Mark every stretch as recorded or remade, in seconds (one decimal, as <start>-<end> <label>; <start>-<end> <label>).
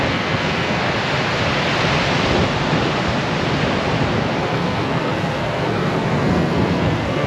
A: 0.0-0.8 remade; 0.8-4.4 recorded; 4.4-7.3 remade